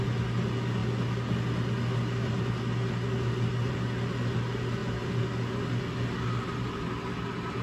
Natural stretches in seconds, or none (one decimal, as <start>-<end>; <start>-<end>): 0.0-7.6